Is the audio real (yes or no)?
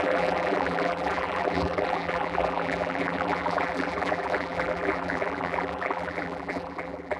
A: no